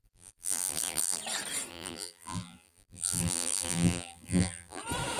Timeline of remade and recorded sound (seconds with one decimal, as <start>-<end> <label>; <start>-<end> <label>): 0.0-1.2 remade; 1.2-1.7 recorded; 1.7-4.8 remade; 4.8-5.2 recorded